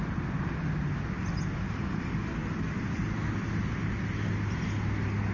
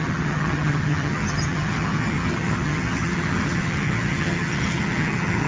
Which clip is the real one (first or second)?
first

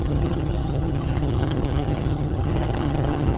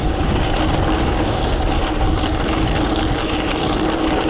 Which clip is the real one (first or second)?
second